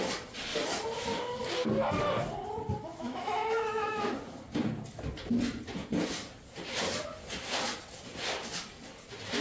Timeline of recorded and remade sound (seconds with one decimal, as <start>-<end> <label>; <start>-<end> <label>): 0.0-3.0 recorded; 3.0-4.0 remade; 4.0-9.4 recorded